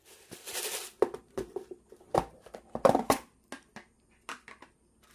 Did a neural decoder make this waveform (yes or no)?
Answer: no